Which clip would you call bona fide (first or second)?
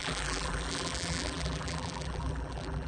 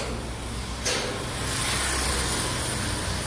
second